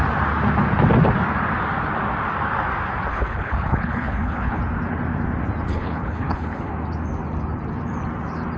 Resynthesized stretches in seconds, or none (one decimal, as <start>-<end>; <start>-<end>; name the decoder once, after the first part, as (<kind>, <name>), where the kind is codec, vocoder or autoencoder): 3.1-4.6 (codec, HILCodec); 5.7-6.7